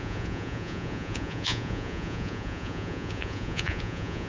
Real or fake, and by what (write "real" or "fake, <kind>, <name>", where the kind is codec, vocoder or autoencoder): fake, vocoder, Vocos